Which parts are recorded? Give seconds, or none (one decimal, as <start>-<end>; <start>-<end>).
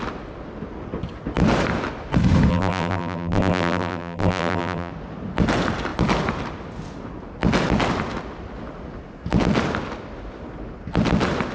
0.0-2.5; 4.9-11.5